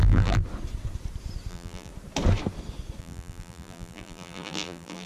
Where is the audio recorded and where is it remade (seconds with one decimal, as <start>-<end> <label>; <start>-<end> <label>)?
0.0-0.4 remade; 0.4-1.5 recorded; 1.5-1.9 remade; 1.9-3.0 recorded; 3.0-5.1 remade

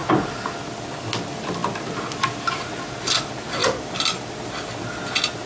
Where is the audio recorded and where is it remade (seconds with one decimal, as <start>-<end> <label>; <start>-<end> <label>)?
0.0-3.6 recorded; 3.6-4.6 remade; 4.6-5.5 recorded

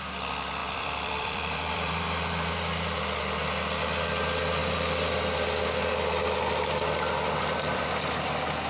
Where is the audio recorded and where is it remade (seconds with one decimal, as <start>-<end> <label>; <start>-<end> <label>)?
0.0-0.6 recorded; 0.6-2.5 remade; 2.5-8.7 recorded

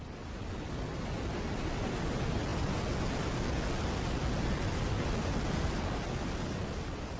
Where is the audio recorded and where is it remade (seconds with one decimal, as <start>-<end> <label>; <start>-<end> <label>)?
0.0-7.2 recorded

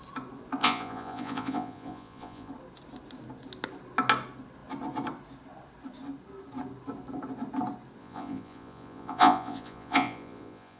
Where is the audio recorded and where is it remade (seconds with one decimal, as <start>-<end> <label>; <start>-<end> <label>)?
0.0-0.6 recorded; 0.6-2.5 remade; 2.5-8.0 recorded; 8.0-10.8 remade

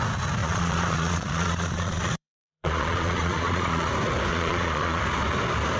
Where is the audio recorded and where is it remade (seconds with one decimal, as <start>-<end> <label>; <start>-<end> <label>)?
0.0-0.4 recorded; 0.4-3.9 remade; 3.9-4.3 recorded; 4.3-5.0 remade; 5.0-5.8 recorded

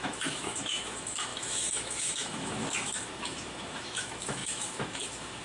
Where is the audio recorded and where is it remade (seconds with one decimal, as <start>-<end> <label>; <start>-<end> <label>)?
0.0-5.4 remade